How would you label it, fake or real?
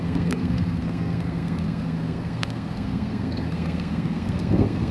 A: fake